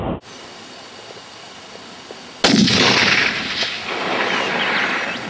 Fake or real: real